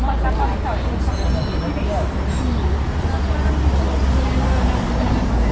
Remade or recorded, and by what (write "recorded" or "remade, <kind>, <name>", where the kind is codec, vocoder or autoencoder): recorded